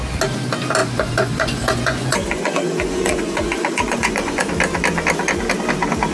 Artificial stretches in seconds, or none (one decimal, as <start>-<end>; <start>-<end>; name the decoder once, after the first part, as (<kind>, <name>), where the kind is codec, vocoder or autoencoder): 0.8-4.5 (vocoder, Vocos)